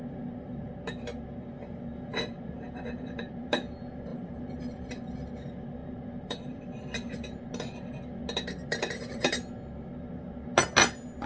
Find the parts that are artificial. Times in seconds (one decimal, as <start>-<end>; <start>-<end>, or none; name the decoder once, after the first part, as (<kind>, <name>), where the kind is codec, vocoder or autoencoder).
2.1-3.6 (vocoder, BigVGAN v2); 4.1-4.9; 5.8-7.4; 8.6-9.5